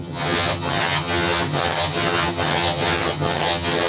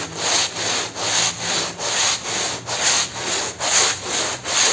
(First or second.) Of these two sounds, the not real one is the first